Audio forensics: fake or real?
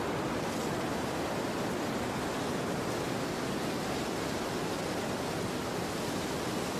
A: real